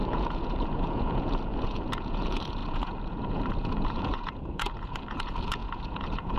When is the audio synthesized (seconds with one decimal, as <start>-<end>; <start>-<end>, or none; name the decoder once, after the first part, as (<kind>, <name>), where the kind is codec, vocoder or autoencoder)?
0.0-6.4 (vocoder, Vocos)